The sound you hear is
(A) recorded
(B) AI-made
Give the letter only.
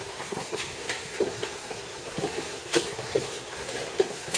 B